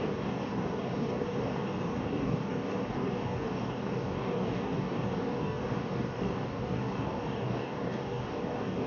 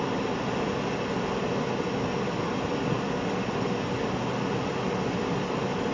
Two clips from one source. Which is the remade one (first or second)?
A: first